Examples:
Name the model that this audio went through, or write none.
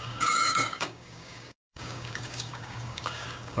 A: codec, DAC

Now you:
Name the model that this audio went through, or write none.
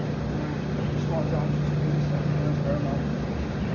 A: none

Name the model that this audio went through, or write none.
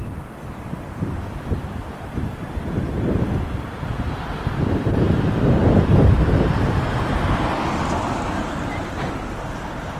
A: vocoder, BigVGAN v2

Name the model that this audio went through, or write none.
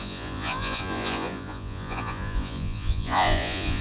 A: vocoder, Vocos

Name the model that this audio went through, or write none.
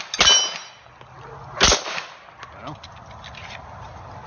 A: none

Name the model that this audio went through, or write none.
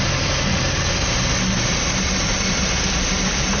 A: vocoder, BigVGAN v2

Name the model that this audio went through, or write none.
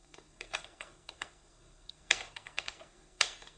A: codec, SNAC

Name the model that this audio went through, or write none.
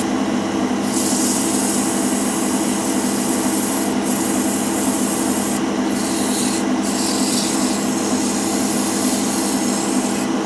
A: none